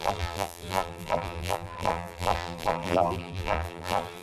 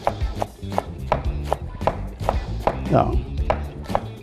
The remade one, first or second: first